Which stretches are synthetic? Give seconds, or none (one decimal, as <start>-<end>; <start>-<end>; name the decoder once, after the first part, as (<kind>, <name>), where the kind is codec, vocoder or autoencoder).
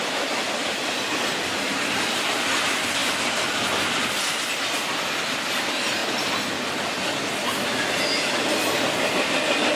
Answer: none